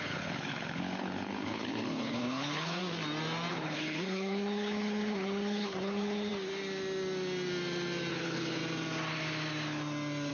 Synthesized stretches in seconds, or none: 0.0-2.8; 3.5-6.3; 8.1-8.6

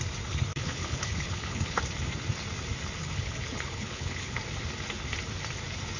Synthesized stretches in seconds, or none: 0.5-1.8; 3.0-4.4

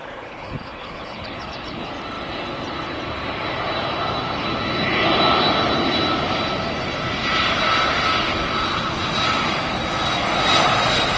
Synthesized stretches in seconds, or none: 0.0-1.9

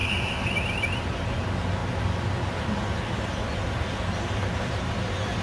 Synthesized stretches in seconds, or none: none

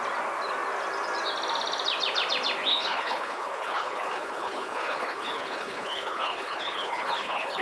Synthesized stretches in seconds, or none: 2.7-7.6